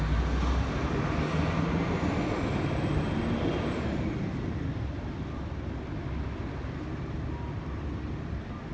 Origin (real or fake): real